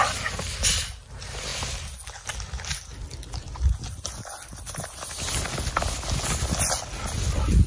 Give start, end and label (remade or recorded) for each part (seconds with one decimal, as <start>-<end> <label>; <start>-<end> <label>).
0.0-7.7 recorded

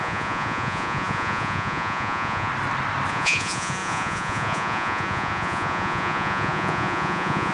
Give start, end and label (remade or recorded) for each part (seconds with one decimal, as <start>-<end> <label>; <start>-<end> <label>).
0.0-2.5 remade; 2.5-3.1 recorded; 3.1-7.5 remade

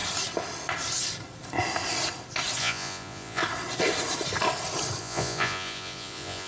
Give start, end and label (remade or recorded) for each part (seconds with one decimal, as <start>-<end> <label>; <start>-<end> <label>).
0.0-2.6 recorded; 2.6-3.4 remade; 3.4-5.0 recorded; 5.0-6.5 remade